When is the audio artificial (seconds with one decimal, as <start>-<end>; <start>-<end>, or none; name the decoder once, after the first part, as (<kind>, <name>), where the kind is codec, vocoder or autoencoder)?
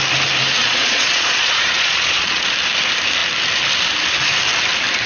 0.6-2.5 (vocoder, Vocos)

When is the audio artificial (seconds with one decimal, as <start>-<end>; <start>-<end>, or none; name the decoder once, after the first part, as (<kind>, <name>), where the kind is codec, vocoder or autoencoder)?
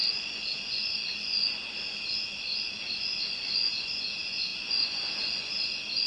0.0-6.1 (vocoder, Vocos)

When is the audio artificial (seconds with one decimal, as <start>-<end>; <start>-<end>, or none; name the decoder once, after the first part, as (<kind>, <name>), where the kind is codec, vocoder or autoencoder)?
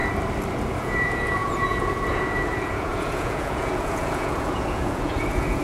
0.8-5.6 (vocoder, Vocos)